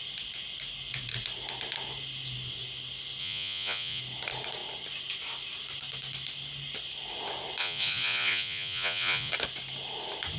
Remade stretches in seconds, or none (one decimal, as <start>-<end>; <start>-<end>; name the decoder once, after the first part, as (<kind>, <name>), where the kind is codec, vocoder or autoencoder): 3.2-4.0 (vocoder, Vocos); 7.6-9.3